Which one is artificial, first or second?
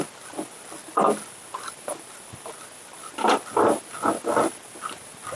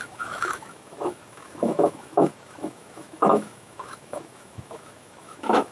second